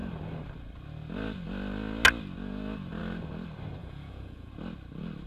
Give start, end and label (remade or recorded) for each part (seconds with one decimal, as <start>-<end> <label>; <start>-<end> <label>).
0.0-3.8 recorded; 3.8-4.5 remade; 4.5-5.3 recorded